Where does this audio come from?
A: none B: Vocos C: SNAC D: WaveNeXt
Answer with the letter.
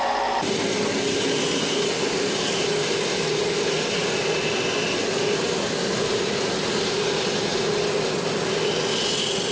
A